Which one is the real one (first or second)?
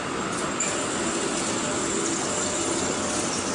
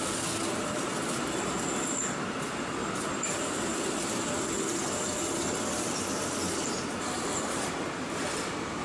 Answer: first